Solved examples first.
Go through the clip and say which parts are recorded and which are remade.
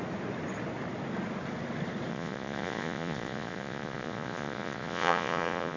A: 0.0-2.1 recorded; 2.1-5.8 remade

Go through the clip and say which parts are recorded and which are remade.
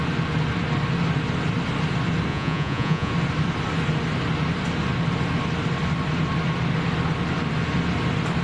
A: 0.0-2.3 recorded; 2.3-3.1 remade; 3.1-8.4 recorded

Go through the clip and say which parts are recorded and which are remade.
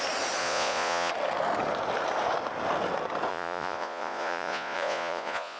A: 0.0-0.4 recorded; 0.4-1.1 remade; 1.1-3.3 recorded; 3.3-5.6 remade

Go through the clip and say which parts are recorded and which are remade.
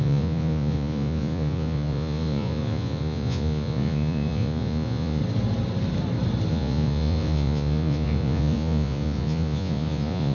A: 0.0-5.2 remade; 5.2-6.5 recorded; 6.5-10.3 remade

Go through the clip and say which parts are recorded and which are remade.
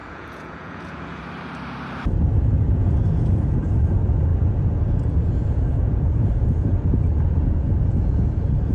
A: 0.0-1.2 remade; 1.2-2.8 recorded; 2.8-3.5 remade; 3.5-4.3 recorded; 4.3-8.7 remade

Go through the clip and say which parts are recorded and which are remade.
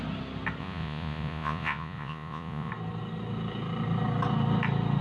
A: 0.0-0.6 recorded; 0.6-2.7 remade; 2.7-5.0 recorded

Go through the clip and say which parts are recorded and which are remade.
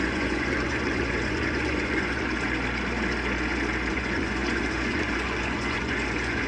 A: 0.0-2.3 remade; 2.3-3.9 recorded; 3.9-6.5 remade